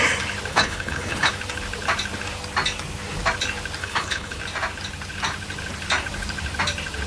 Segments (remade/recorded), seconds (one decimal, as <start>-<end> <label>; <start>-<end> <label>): 0.0-0.5 recorded; 0.5-1.3 remade; 1.3-3.8 recorded; 3.8-4.4 remade; 4.4-7.1 recorded